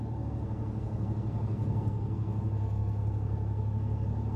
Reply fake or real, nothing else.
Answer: fake